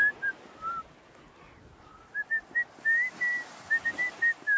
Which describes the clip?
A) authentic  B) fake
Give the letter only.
A